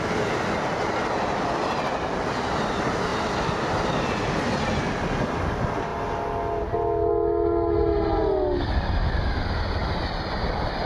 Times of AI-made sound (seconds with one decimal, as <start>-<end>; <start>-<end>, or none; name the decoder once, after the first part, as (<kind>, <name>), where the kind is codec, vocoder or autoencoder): none